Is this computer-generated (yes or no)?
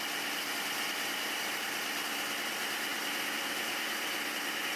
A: no